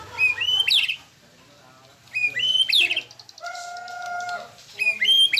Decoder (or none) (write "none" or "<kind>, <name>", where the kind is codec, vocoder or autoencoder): none